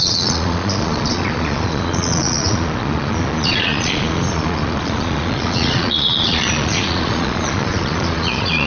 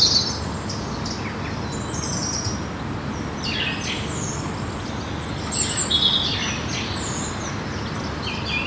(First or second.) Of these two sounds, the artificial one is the first